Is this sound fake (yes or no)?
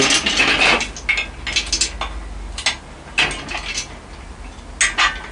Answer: no